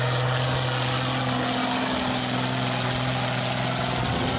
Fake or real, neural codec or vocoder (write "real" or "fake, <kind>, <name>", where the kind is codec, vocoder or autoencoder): real